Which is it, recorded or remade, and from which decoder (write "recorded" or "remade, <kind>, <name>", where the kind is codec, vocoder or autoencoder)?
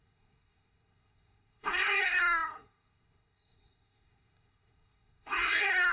remade, codec, SNAC